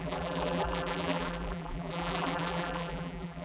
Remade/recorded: remade